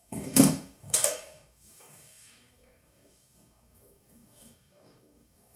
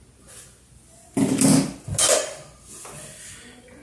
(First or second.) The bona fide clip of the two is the second